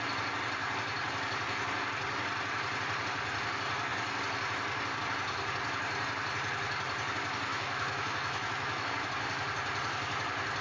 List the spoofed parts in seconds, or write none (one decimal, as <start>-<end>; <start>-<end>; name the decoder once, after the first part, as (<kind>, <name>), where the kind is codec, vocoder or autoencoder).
7.5-9.1 (autoencoder, DAC-VAE)